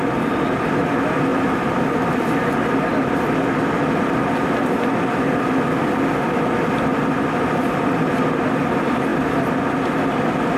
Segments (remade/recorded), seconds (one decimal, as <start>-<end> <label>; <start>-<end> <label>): 0.0-1.3 recorded; 1.3-1.8 remade; 1.8-10.6 recorded